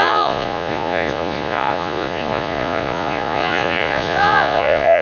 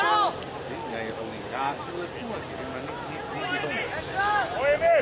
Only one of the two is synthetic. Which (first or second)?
first